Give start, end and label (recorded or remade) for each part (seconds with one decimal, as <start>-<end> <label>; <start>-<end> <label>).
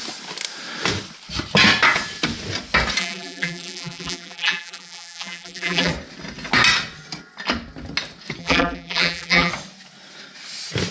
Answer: 0.0-3.0 recorded; 3.0-5.9 remade; 5.9-8.4 recorded; 8.4-9.5 remade; 9.5-10.9 recorded